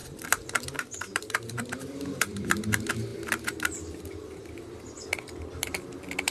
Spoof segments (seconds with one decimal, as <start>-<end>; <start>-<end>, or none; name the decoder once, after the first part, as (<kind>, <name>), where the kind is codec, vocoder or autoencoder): 0.0-6.3 (vocoder, BigVGAN v2)